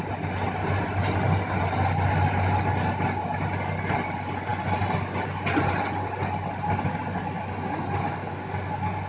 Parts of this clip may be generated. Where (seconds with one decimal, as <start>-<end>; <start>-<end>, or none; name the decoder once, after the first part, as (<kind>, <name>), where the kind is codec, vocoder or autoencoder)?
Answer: none